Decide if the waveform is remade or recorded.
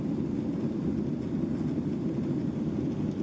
recorded